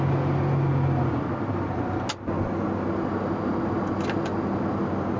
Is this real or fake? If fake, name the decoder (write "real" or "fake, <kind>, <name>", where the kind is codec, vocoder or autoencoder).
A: real